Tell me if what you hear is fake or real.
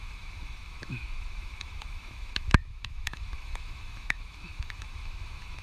fake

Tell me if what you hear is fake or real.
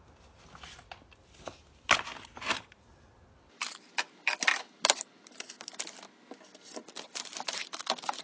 real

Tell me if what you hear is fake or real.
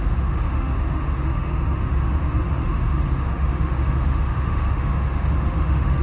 fake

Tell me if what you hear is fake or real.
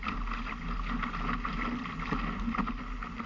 real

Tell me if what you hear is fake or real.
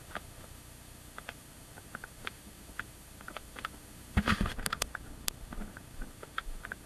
fake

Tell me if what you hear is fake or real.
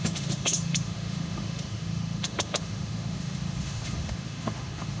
fake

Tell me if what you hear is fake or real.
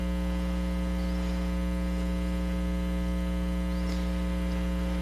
real